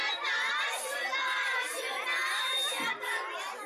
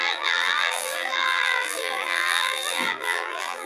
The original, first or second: first